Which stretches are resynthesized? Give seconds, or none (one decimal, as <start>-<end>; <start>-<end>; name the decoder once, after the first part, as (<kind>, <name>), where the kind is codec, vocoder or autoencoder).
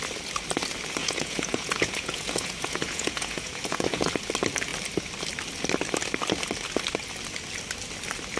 1.0-4.1 (vocoder, Vocos)